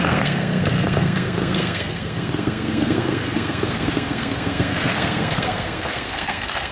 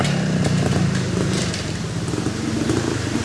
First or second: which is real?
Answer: second